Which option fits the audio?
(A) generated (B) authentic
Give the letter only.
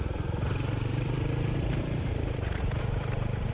A